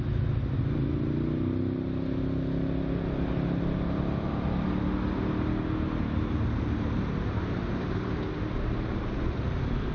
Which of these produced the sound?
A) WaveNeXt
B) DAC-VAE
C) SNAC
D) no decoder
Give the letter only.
D